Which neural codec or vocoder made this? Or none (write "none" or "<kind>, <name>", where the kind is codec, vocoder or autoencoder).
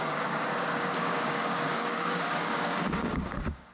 codec, DAC